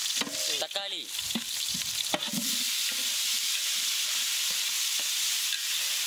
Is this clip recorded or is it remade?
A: recorded